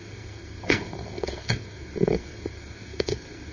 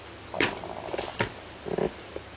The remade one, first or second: first